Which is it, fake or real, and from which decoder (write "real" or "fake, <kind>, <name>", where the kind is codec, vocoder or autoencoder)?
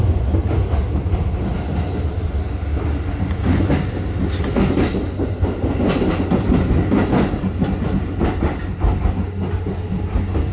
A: real